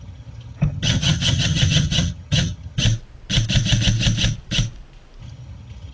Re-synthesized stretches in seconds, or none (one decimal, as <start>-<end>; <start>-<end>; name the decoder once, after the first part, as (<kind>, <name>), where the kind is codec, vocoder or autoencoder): 0.0-2.8 (vocoder, HiFi-GAN); 5.2-5.9